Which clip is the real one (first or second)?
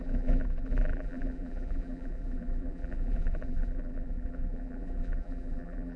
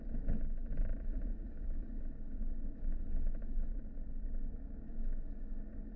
second